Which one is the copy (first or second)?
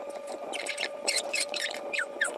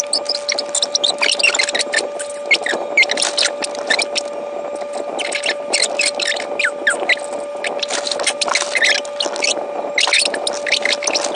first